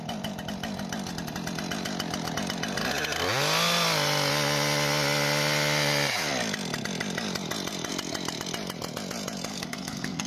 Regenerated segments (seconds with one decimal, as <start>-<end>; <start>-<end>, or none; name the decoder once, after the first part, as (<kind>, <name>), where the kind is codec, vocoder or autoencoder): 9.5-10.3 (codec, SNAC)

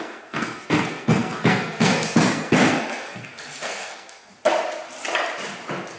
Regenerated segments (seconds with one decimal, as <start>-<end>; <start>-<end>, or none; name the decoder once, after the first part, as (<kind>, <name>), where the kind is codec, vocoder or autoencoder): 0.0-4.3 (codec, SNAC)